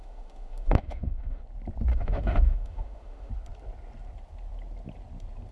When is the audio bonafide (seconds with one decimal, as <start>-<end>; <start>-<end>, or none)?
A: 1.4-1.9; 3.3-5.5